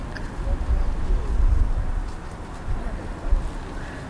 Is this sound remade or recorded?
recorded